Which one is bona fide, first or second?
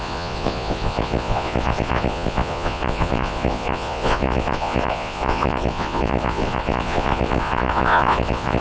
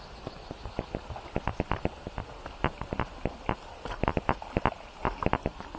second